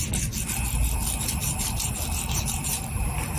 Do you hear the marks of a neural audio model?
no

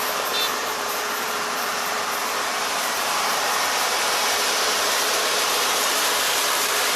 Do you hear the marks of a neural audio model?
yes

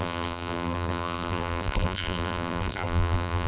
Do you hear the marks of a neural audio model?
yes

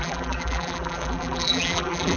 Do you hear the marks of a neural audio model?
yes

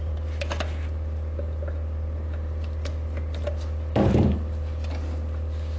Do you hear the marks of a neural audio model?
yes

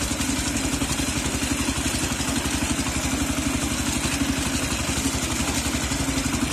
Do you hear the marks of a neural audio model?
no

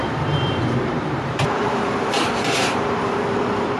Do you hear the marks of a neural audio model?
yes